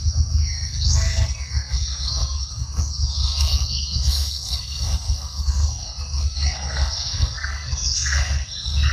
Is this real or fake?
fake